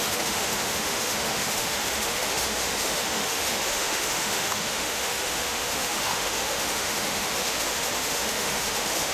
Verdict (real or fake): fake